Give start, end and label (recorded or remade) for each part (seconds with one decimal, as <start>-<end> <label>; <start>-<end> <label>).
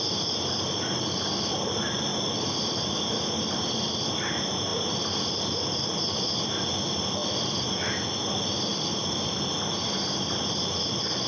0.0-11.3 recorded